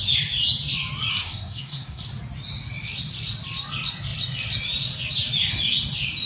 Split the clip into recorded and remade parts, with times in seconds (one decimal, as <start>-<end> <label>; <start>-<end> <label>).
0.0-1.1 recorded; 1.1-2.0 remade; 2.0-6.3 recorded